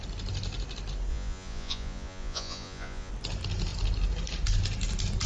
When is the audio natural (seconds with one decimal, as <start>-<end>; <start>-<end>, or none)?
0.0-1.1; 3.1-5.3